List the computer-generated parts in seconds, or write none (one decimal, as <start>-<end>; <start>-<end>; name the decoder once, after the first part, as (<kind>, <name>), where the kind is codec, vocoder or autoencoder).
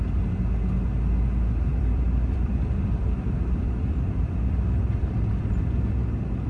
1.7-5.6 (vocoder, BigVGAN v2)